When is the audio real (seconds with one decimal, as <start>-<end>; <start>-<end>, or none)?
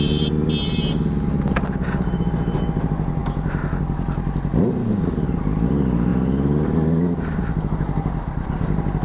0.0-9.0